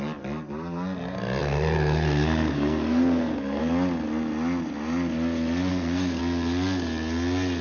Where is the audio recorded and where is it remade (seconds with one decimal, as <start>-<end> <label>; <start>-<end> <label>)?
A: 0.0-1.4 recorded; 1.4-3.6 remade; 3.6-5.7 recorded; 5.7-6.2 remade; 6.2-7.6 recorded